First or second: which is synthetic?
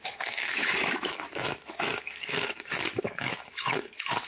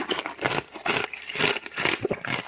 first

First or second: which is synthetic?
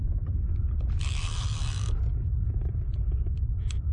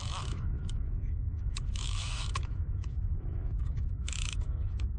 second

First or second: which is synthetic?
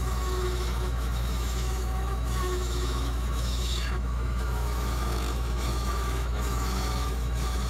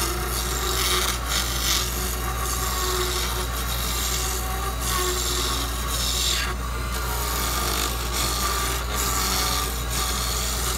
first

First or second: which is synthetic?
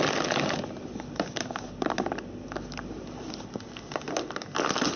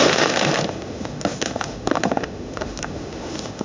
second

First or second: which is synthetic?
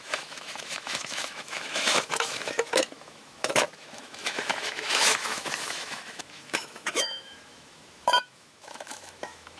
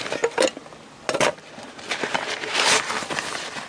first